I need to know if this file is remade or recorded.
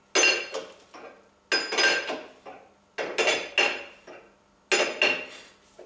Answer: recorded